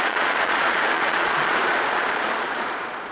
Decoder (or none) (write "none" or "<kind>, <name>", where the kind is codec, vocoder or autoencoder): vocoder, Vocos